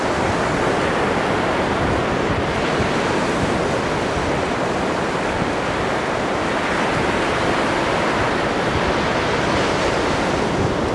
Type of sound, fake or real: real